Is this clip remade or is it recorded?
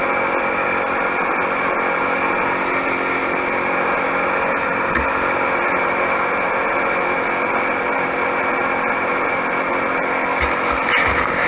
recorded